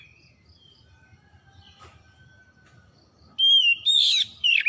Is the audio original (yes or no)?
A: yes